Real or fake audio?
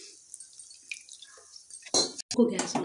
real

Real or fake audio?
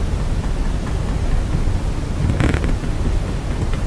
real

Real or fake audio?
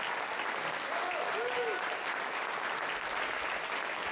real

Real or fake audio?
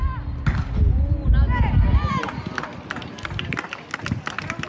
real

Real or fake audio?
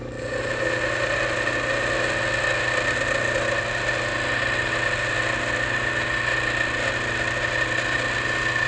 real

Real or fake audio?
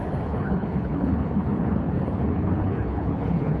fake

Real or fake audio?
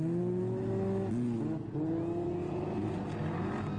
real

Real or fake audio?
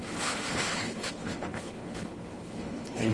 fake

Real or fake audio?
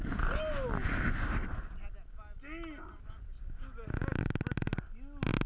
real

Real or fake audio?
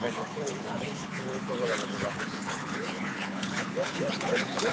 fake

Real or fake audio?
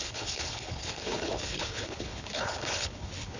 fake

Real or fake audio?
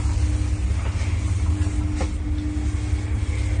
real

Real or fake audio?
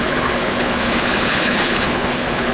fake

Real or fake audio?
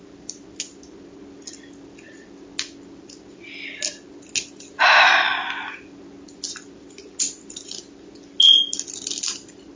real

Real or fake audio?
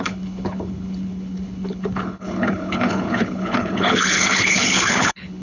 fake